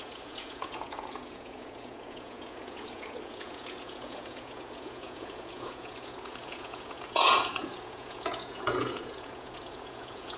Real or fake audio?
fake